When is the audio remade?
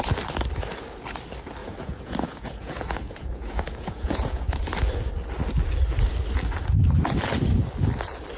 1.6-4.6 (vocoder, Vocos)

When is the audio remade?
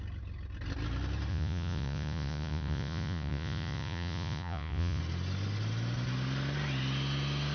1.3-5.0 (vocoder, Vocos)